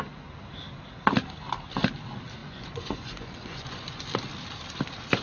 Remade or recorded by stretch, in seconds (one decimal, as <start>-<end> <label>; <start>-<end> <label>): 0.0-2.4 recorded; 2.4-4.0 remade; 4.0-5.2 recorded

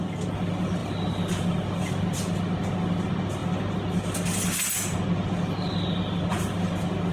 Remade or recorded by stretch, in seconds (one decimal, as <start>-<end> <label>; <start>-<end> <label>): 0.0-7.1 recorded

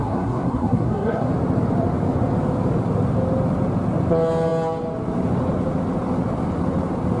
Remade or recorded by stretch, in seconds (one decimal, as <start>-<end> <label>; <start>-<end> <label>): 0.0-1.3 remade; 1.3-7.2 recorded

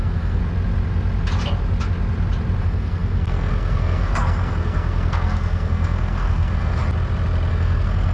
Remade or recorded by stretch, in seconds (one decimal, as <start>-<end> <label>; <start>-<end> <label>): 0.0-0.4 remade; 0.4-2.6 recorded; 2.6-6.8 remade; 6.8-7.5 recorded; 7.5-8.1 remade